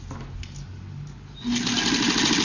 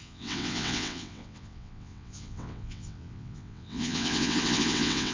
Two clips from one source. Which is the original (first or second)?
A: first